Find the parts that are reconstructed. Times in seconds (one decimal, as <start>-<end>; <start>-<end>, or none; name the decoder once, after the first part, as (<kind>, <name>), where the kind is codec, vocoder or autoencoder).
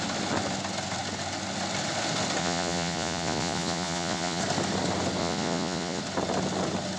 2.4-4.4 (vocoder, Vocos); 5.2-6.0